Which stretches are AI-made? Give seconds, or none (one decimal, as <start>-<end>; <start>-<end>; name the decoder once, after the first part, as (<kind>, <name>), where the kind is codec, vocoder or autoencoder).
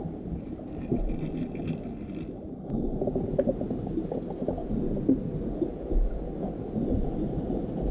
none